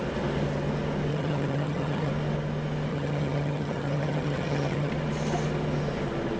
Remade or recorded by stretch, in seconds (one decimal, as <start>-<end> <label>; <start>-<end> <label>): 0.0-1.1 recorded; 1.1-2.1 remade; 2.1-2.9 recorded; 2.9-4.9 remade; 4.9-6.4 recorded